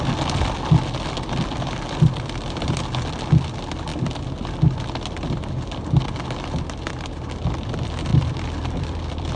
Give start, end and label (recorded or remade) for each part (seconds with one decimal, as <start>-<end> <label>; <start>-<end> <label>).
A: 0.0-8.1 recorded; 8.1-9.4 remade